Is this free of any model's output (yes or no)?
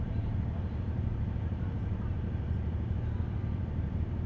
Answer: no